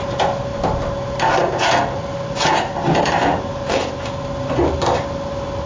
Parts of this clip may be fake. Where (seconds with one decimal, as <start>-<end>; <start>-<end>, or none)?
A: 0.0-0.5; 2.6-5.7